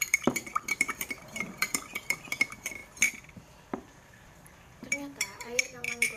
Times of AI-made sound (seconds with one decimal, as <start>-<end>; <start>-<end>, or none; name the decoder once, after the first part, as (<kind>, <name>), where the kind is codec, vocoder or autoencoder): 0.0-2.8 (vocoder, BigVGAN v2); 3.3-6.2